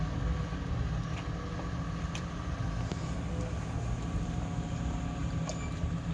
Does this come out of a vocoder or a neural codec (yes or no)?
no